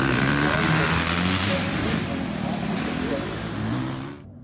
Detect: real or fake real